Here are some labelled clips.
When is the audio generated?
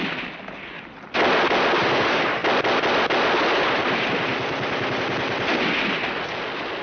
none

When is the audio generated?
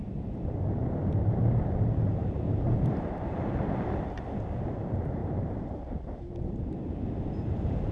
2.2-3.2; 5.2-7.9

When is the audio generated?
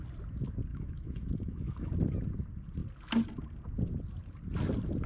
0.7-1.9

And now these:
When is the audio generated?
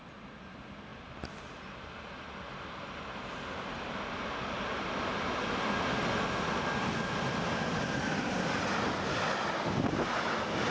none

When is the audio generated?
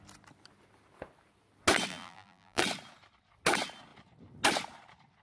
1.9-2.6